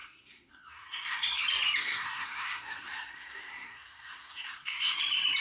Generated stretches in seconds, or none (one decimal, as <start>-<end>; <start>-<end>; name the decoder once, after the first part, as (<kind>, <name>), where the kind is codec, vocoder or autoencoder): 0.0-1.4 (codec, SNAC); 1.8-5.0